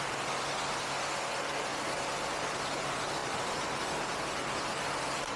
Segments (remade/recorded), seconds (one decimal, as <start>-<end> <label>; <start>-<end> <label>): 0.0-1.7 recorded; 1.7-2.6 remade; 2.6-3.2 recorded; 3.2-3.8 remade; 3.8-5.4 recorded